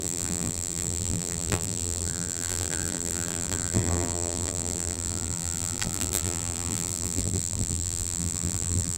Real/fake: fake